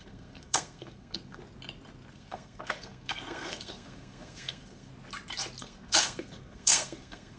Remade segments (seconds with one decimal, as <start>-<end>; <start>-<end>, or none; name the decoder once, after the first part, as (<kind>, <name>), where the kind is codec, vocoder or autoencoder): 0.0-1.4 (codec, SNAC); 2.1-4.9; 5.6-7.4